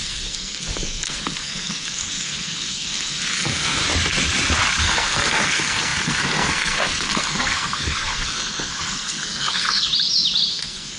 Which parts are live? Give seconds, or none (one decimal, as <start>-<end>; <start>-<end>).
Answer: 3.8-4.8; 9.9-10.5